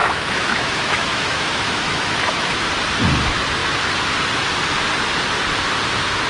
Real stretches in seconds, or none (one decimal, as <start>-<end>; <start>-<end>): 2.7-6.3